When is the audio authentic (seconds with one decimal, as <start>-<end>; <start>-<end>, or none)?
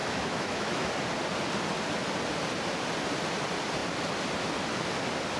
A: 0.9-5.4